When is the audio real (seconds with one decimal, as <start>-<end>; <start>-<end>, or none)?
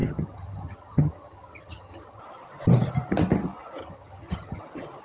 2.2-3.8; 4.6-5.0